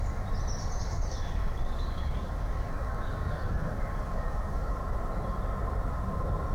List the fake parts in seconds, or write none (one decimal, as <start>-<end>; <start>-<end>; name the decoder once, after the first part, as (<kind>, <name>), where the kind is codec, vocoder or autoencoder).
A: 0.8-4.7 (codec, DAC)